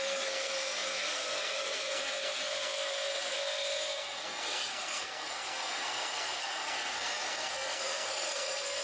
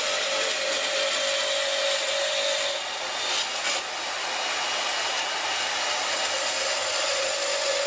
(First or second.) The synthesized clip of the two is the first